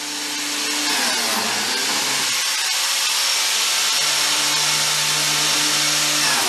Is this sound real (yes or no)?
yes